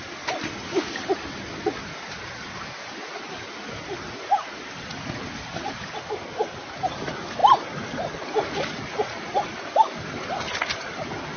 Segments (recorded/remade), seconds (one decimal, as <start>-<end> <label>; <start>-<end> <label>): 0.0-11.4 recorded